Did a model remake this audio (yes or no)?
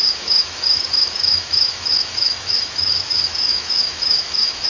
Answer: yes